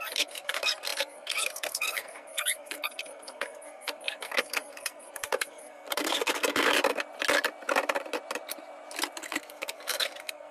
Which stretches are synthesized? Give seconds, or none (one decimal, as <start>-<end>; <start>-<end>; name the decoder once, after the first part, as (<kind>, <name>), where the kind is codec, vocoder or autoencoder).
0.0-6.7 (codec, SNAC); 9.2-10.5

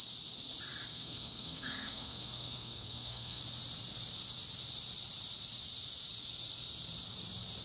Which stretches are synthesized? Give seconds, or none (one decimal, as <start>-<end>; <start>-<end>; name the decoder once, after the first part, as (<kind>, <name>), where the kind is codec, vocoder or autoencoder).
0.9-3.4 (codec, SNAC)

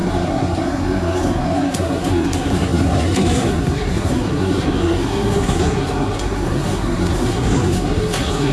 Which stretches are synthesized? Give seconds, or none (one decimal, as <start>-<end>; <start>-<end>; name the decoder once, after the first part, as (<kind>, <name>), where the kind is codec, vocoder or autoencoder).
0.0-8.5 (codec, SNAC)

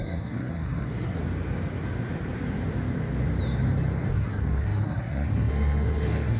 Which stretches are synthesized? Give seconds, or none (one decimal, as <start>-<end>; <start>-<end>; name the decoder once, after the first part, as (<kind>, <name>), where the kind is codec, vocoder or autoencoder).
0.0-1.2 (codec, SNAC); 4.1-6.4

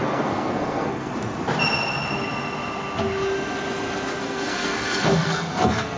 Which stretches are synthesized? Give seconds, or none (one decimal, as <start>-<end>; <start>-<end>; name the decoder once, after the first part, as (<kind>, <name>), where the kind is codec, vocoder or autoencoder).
0.0-1.1 (codec, SNAC); 4.2-6.0

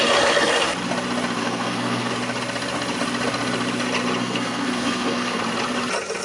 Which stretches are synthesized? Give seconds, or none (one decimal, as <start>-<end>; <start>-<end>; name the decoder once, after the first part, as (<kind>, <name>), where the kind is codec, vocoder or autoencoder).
1.4-2.1 (codec, SNAC); 4.2-5.4

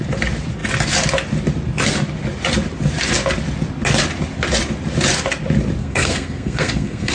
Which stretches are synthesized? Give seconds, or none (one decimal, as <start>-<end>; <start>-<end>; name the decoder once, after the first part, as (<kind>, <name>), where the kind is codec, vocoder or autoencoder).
5.8-7.1 (codec, SNAC)